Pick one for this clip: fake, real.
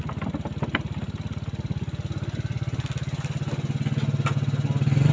real